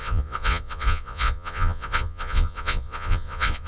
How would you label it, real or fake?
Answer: fake